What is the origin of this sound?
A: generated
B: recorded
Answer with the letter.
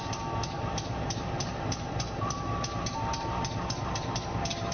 A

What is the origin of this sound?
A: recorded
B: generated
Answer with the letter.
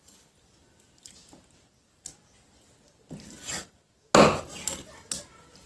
A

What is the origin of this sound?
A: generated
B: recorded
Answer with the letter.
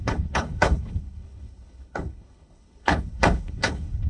A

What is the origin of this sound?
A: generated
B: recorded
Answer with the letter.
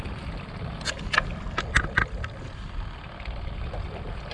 B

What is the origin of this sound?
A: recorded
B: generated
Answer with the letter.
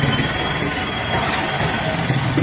A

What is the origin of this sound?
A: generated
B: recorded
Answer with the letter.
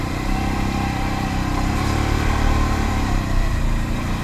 A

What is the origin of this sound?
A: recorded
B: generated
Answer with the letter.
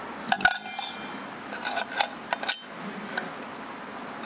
A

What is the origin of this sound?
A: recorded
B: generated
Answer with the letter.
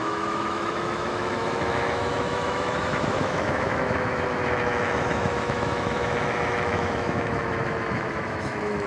B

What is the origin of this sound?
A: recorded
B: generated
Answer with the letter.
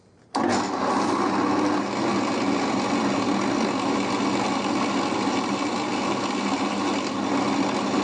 A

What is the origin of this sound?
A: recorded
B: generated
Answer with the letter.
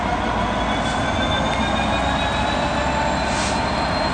A